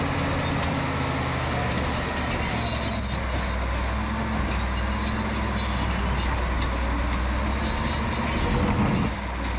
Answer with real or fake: real